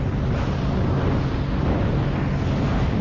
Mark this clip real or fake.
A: real